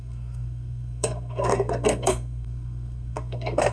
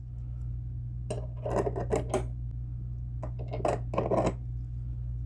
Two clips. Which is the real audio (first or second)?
second